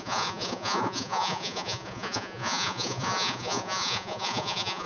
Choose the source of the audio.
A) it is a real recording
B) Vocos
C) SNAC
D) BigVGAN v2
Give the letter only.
B